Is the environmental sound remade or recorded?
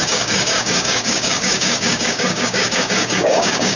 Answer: remade